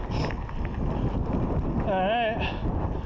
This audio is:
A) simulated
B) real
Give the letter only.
B